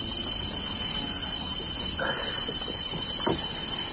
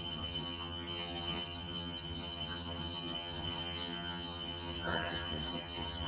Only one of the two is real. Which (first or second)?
first